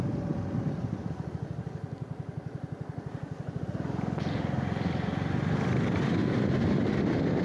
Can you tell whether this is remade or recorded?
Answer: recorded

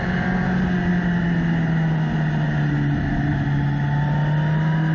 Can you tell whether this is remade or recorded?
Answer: recorded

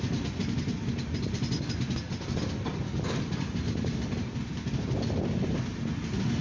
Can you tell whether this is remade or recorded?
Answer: recorded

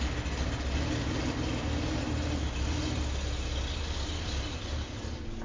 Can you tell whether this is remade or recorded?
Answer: recorded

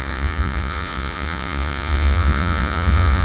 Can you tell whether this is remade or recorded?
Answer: remade